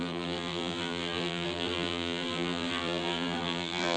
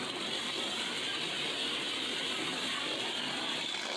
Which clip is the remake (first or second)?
first